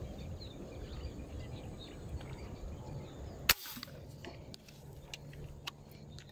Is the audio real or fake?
real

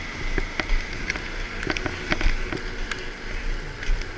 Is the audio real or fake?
real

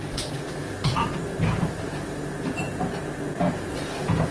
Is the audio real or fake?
fake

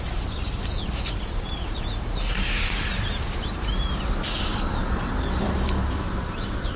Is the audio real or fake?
fake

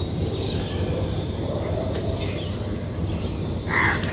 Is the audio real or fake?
fake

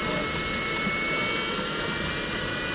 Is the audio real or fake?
real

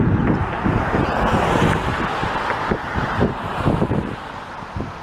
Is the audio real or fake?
real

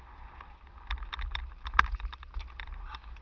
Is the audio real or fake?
real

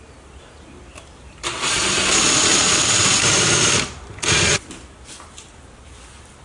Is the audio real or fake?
fake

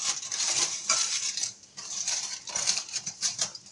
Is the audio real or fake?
fake